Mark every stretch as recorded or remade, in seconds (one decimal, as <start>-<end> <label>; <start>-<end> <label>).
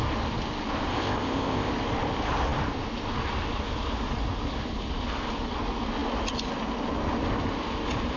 0.0-0.9 recorded; 0.9-1.7 remade; 1.7-8.2 recorded